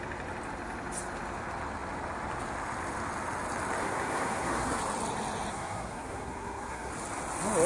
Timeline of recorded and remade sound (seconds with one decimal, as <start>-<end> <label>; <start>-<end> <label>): 0.0-3.8 recorded; 3.8-4.8 remade; 4.8-5.5 recorded; 5.5-6.9 remade; 6.9-7.7 recorded